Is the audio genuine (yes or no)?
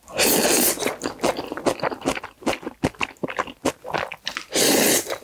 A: yes